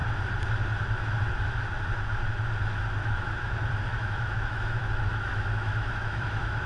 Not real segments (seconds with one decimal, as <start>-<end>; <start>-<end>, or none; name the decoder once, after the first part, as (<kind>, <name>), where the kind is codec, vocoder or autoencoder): 3.0-3.5 (autoencoder, DAC-VAE); 3.9-6.7